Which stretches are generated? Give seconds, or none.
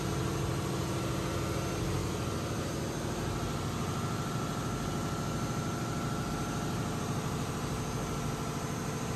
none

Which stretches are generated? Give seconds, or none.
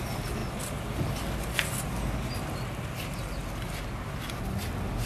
none